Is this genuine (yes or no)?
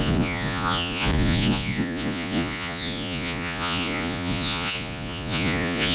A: no